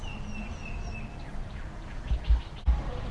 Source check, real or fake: real